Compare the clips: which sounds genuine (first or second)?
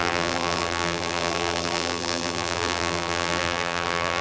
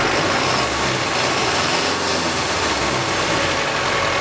second